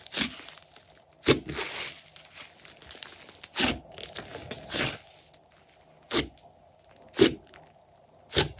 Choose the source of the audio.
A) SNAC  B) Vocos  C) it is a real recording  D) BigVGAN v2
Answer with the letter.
C